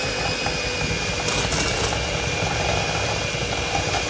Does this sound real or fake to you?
real